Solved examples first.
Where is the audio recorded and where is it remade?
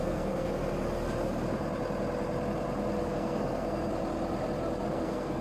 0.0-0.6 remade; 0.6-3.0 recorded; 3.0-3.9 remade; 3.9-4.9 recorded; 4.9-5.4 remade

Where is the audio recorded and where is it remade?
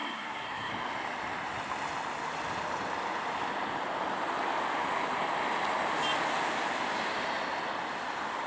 0.0-0.7 remade; 0.7-8.5 recorded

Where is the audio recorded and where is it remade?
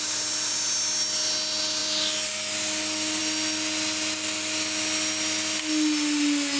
0.0-6.6 recorded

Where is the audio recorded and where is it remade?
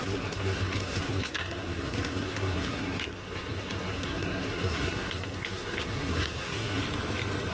0.0-6.8 remade; 6.8-7.5 recorded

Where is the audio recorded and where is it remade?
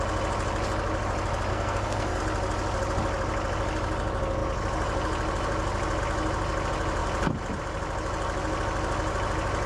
0.0-1.5 recorded; 1.5-2.2 remade; 2.2-9.7 recorded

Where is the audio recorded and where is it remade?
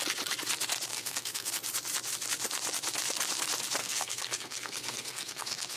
0.0-0.9 recorded; 0.9-1.5 remade; 1.5-3.8 recorded; 3.8-5.8 remade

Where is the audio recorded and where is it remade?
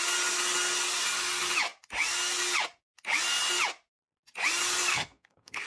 0.0-4.9 recorded; 4.9-5.7 remade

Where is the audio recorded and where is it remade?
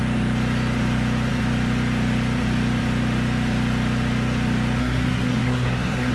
0.0-4.8 recorded; 4.8-6.1 remade